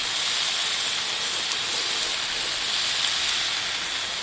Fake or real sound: real